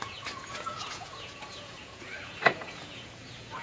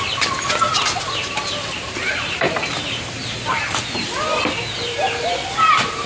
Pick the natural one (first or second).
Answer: second